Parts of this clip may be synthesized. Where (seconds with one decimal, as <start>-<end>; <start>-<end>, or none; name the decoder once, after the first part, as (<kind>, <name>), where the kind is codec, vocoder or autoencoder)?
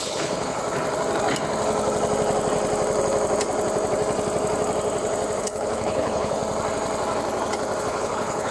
0.0-0.6 (codec, HILCodec); 5.4-6.4; 7.8-8.5